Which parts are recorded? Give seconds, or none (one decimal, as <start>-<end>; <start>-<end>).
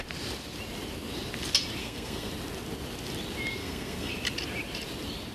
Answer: 0.0-1.8; 2.3-3.6; 4.1-5.3